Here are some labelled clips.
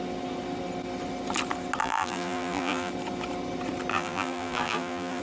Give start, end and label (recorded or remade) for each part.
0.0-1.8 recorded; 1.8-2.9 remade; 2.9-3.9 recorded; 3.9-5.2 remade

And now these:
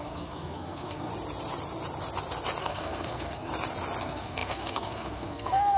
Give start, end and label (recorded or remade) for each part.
0.0-1.1 remade; 1.1-2.6 recorded; 2.6-3.5 remade; 3.5-4.0 recorded; 4.0-5.8 remade

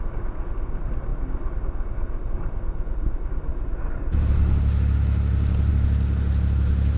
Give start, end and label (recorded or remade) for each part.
0.0-7.0 recorded

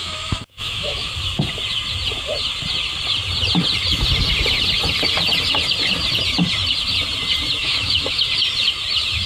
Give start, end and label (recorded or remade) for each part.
0.0-1.1 remade; 1.1-7.6 recorded; 7.6-8.2 remade; 8.2-9.3 recorded

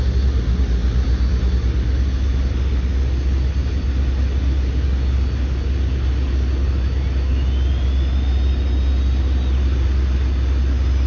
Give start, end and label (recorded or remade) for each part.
0.0-11.1 recorded

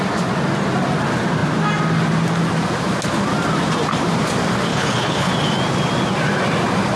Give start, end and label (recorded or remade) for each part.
0.0-4.7 recorded; 4.7-5.3 remade; 5.3-7.0 recorded